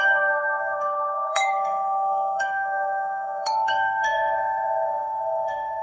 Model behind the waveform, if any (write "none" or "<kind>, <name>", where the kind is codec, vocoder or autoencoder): autoencoder, DAC-VAE